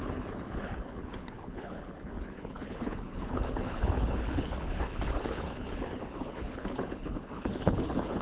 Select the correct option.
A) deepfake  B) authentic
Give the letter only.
A